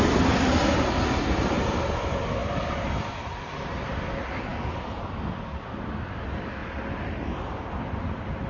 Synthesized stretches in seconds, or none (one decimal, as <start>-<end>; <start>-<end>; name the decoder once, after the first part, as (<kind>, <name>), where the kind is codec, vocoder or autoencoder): none